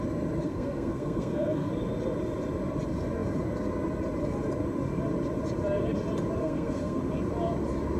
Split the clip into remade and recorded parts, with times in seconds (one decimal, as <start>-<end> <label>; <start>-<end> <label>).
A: 0.0-0.4 recorded; 0.4-1.7 remade; 1.7-6.4 recorded; 6.4-7.0 remade; 7.0-8.0 recorded